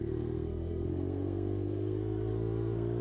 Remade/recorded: remade